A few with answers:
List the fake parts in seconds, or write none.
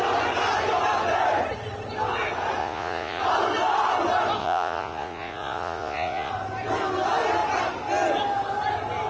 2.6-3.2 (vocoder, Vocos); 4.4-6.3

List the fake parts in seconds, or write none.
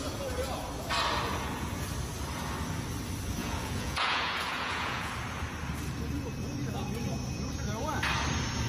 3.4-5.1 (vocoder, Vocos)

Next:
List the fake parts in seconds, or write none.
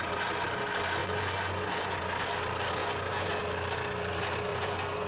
1.0-2.0 (vocoder, Vocos); 2.8-3.4; 4.5-5.1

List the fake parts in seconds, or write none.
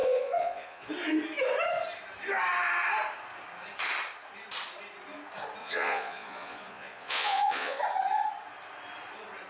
0.0-0.9 (vocoder, Vocos); 5.6-7.8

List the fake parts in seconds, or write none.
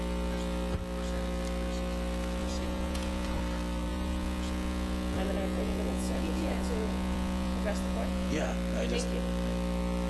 2.4-3.4 (vocoder, Vocos); 3.9-8.4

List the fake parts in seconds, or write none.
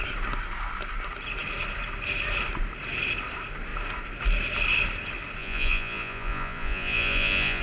5.4-7.6 (vocoder, Vocos)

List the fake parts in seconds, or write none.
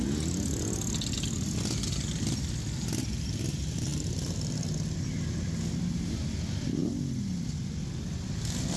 none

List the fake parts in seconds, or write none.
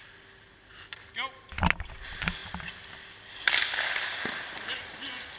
none